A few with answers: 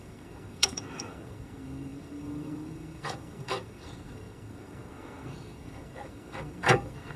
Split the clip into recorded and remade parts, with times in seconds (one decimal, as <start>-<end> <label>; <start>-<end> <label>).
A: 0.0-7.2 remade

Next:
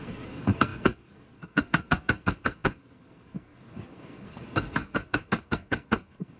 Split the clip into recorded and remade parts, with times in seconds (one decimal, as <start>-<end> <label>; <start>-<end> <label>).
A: 0.0-6.4 remade

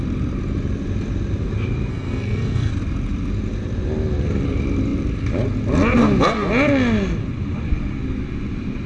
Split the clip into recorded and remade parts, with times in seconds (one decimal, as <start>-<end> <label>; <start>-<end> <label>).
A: 0.0-1.9 recorded; 1.9-2.7 remade; 2.7-8.9 recorded